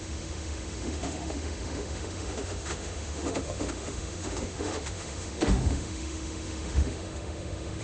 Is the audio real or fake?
fake